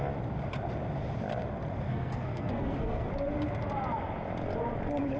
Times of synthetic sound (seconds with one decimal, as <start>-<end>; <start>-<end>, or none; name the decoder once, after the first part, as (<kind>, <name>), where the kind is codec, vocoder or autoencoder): 1.9-3.1 (codec, SNAC)